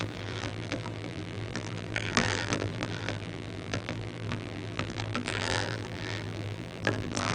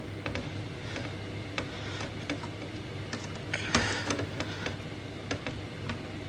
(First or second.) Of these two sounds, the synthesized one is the first